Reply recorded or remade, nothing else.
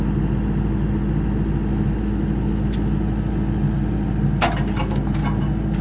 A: recorded